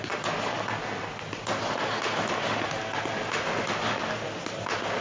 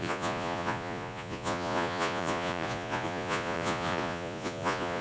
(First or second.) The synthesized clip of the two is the second